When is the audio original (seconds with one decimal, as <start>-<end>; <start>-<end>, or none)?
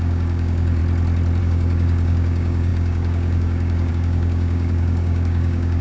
0.8-1.4